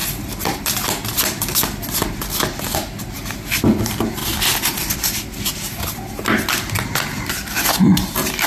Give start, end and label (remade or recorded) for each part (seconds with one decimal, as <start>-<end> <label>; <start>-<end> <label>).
0.0-8.5 recorded